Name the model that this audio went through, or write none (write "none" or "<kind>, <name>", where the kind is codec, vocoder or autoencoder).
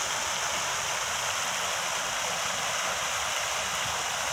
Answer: none